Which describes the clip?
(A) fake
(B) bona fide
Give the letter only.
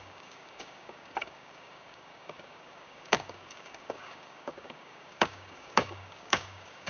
A